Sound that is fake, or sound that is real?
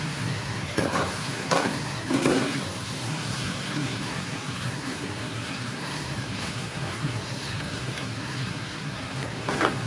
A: fake